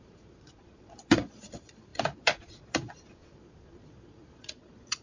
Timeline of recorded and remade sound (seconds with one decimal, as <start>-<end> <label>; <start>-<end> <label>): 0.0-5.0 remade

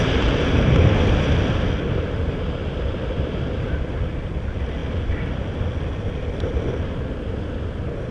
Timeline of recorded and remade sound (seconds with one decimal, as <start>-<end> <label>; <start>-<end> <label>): 0.0-8.1 recorded

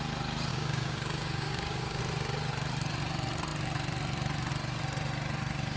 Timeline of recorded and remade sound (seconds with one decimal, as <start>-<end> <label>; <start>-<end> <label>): 0.0-0.5 recorded; 0.5-2.0 remade; 2.0-5.8 recorded

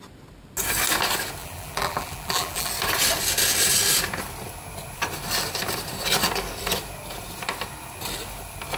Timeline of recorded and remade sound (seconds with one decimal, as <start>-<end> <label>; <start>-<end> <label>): 0.0-1.4 recorded; 1.4-2.7 remade; 2.7-8.8 recorded

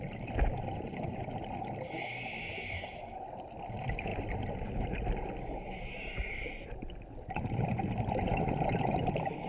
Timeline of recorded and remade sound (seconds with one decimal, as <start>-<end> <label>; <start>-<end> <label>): 0.0-9.5 recorded

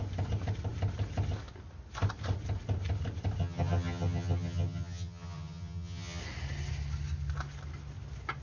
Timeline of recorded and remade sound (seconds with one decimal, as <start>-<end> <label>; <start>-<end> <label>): 0.0-3.4 recorded; 3.4-6.2 remade; 6.2-8.4 recorded

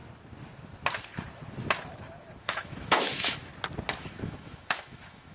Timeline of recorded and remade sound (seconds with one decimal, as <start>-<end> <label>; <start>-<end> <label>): 0.0-2.4 recorded; 2.4-3.5 remade; 3.5-4.0 recorded; 4.0-5.3 remade

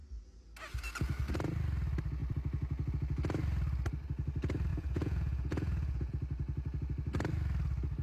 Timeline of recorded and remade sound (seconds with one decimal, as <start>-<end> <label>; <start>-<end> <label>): 0.0-4.7 recorded; 4.7-6.1 remade; 6.1-8.0 recorded